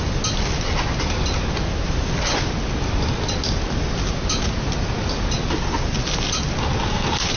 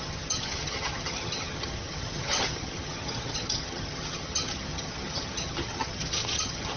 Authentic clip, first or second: first